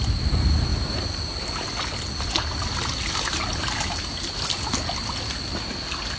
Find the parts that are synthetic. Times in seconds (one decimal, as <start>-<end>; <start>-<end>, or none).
none